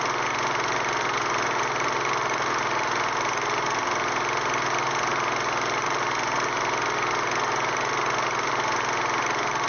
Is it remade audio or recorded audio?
recorded